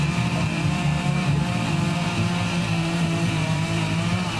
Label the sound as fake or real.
fake